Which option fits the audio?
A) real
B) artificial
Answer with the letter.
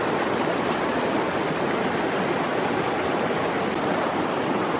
A